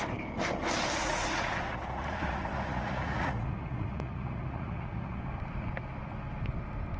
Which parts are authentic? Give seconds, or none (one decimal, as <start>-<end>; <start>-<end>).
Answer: 0.0-1.0; 5.2-7.0

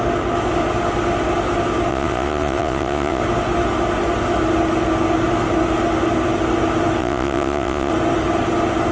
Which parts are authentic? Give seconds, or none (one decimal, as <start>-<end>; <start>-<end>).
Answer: 0.0-1.9; 3.2-7.0; 7.9-8.9

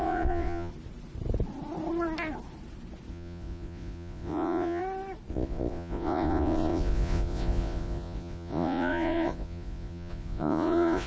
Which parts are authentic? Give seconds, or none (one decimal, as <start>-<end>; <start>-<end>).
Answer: 0.7-3.1; 4.8-5.3

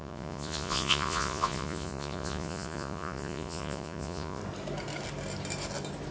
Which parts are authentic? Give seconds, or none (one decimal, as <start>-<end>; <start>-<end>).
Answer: 4.4-6.1